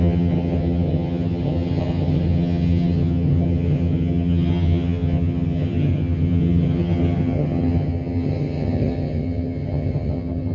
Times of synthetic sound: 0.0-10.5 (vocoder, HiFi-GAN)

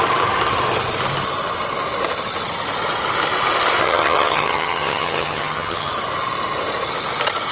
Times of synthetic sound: 3.8-5.9 (vocoder, HiFi-GAN)

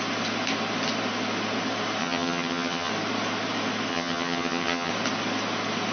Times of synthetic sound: 2.0-2.9 (vocoder, HiFi-GAN); 3.9-4.9

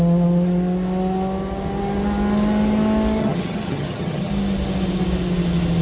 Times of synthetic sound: 3.2-4.3 (vocoder, HiFi-GAN)

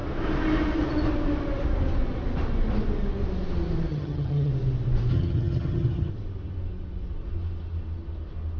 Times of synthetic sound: 3.9-4.5 (vocoder, HiFi-GAN); 5.1-6.1

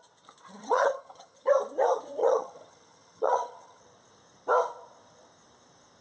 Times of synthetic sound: 0.6-1.5 (vocoder, HiFi-GAN); 2.2-3.8

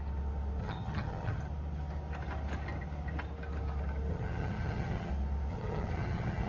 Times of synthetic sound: 0.6-1.4 (vocoder, HiFi-GAN); 4.1-5.1; 5.5-6.5